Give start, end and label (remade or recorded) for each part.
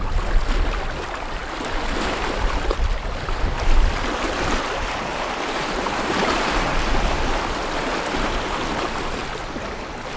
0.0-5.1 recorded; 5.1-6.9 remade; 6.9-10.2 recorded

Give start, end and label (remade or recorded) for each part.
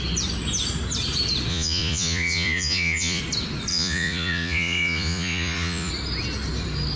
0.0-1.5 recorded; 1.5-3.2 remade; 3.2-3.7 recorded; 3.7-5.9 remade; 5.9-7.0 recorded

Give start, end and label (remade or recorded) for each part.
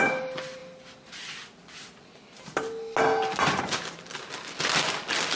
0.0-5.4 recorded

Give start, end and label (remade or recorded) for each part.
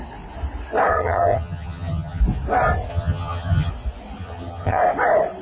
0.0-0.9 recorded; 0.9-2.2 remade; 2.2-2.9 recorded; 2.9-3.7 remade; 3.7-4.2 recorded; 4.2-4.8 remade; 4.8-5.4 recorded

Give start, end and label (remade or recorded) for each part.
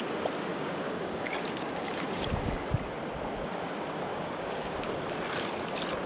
0.0-0.5 recorded; 0.5-2.5 remade; 2.5-4.1 recorded; 4.1-4.9 remade; 4.9-6.1 recorded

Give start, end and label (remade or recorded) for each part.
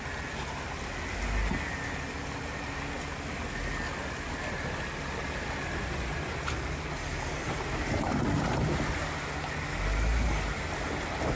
0.0-11.4 recorded